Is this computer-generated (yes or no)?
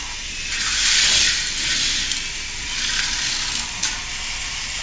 no